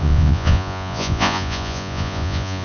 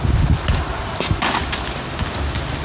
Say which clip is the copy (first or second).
first